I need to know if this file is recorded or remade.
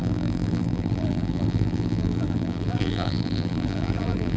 remade